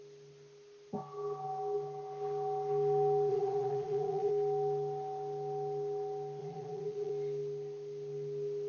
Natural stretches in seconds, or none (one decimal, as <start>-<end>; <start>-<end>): 0.0-3.3; 4.3-6.4; 7.1-8.7